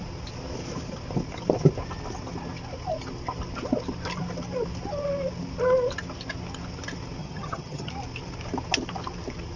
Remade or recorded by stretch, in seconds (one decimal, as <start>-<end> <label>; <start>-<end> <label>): 0.0-7.2 recorded; 7.2-7.9 remade; 7.9-9.6 recorded